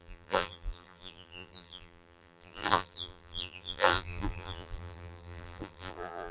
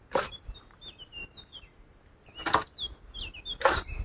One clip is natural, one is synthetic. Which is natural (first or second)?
second